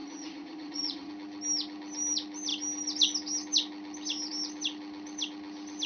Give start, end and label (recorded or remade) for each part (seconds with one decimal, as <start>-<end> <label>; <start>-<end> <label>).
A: 0.0-1.1 remade; 1.1-5.9 recorded